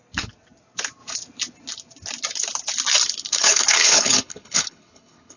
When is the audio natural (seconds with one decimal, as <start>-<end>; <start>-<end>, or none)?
0.0-3.0